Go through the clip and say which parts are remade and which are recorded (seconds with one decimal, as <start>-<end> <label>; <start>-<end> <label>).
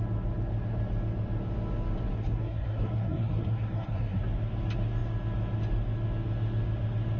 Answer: 0.0-2.1 recorded; 2.1-4.2 remade; 4.2-7.2 recorded